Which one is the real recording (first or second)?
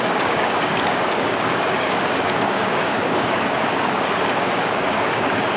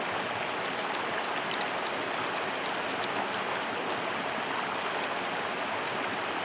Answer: second